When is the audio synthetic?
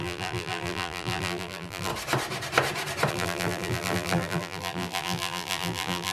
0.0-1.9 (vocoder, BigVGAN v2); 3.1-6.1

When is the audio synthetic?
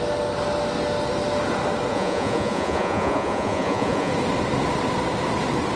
1.9-4.1 (vocoder, Vocos)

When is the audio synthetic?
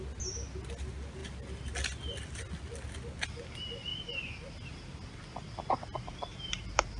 3.9-4.5 (vocoder, BigVGAN v2); 6.3-7.0